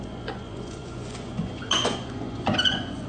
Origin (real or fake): fake